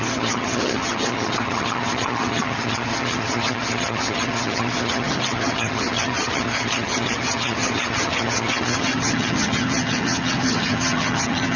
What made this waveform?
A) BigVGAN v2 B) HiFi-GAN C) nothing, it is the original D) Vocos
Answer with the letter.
B